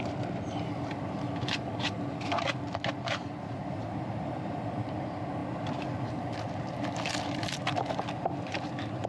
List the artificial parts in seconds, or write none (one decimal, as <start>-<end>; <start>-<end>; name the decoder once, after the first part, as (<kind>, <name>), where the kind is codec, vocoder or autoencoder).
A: none